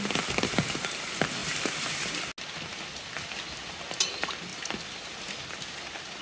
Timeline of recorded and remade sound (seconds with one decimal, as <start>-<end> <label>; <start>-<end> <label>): 0.0-6.2 recorded